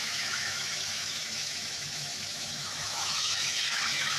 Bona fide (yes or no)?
no